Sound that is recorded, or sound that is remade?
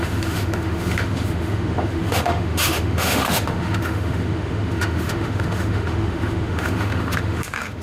remade